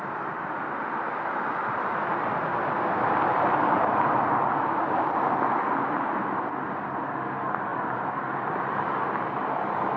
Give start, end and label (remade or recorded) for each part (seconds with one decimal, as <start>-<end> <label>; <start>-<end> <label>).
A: 0.0-7.7 recorded; 7.7-10.0 remade